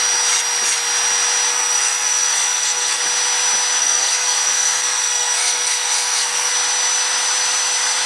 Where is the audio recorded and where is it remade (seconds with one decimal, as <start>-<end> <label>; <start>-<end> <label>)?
0.0-1.5 recorded; 1.5-3.0 remade; 3.0-3.8 recorded; 3.8-6.5 remade; 6.5-8.1 recorded